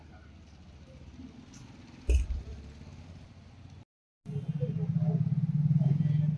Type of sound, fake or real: real